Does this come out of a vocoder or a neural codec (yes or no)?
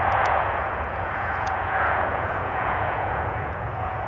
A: yes